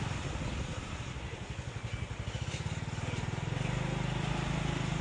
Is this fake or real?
real